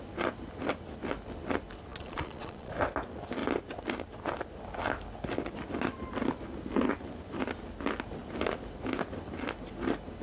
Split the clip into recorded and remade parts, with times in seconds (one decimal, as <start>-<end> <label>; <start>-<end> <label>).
0.0-1.9 recorded; 1.9-2.7 remade; 2.7-10.2 recorded